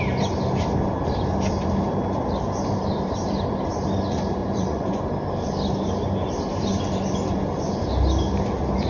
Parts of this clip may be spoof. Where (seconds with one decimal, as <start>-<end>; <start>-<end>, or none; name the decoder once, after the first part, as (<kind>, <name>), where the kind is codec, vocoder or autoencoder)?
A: 4.4-5.0 (vocoder, Vocos)